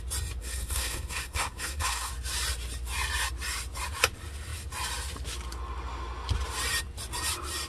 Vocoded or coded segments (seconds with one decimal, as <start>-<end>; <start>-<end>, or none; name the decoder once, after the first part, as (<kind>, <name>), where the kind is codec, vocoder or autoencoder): 0.4-2.1 (codec, SNAC)